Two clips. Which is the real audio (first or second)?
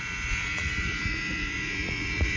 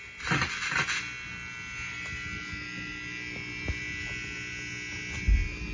second